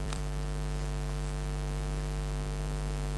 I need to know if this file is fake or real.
fake